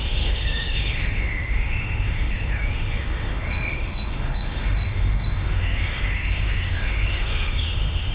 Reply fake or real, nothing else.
fake